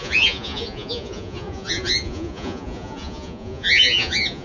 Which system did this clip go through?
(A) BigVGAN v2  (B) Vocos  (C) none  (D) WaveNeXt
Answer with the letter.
B